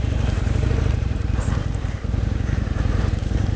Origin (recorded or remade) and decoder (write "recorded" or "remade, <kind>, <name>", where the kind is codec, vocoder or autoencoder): remade, vocoder, BigVGAN v2